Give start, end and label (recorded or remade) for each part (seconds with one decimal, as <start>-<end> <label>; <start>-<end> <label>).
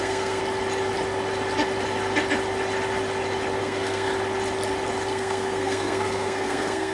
0.0-0.4 remade; 0.4-3.6 recorded; 3.6-4.1 remade; 4.1-5.1 recorded; 5.1-6.9 remade